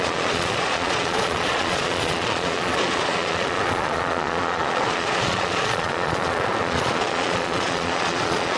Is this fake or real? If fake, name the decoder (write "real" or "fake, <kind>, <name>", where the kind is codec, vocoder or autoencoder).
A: fake, vocoder, Vocos